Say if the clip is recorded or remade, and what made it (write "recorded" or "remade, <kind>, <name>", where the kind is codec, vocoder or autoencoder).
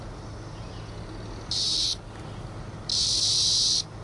recorded